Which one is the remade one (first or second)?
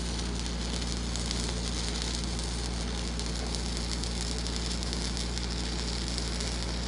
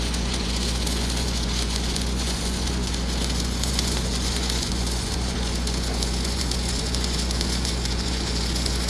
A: second